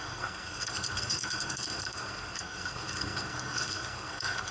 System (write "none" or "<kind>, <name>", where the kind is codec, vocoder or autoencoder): codec, SNAC